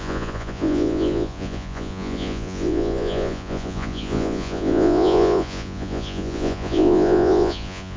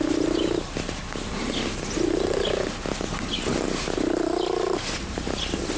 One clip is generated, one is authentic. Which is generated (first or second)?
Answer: first